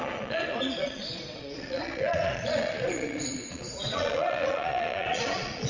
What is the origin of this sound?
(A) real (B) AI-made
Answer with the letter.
B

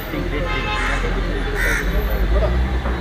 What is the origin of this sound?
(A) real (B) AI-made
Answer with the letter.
A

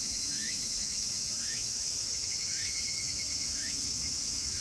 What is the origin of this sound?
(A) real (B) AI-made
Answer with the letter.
B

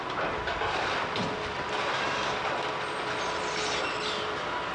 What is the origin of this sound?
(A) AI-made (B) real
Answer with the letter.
B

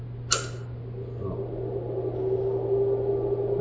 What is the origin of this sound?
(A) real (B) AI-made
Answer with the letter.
A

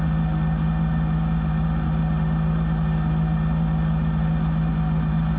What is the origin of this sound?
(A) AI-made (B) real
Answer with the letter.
B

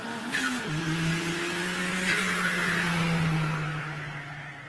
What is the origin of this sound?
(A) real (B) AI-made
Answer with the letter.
A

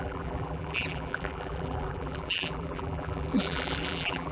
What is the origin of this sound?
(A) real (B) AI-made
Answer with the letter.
B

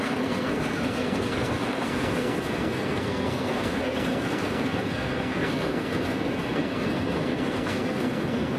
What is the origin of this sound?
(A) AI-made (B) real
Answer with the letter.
A